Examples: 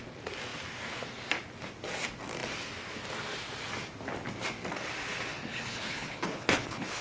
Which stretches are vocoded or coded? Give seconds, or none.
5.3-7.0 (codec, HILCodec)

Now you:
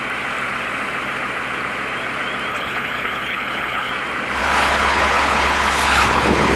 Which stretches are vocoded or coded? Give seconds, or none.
2.5-3.9 (codec, HILCodec); 4.4-6.6

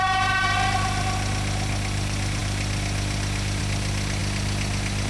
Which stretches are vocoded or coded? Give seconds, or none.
none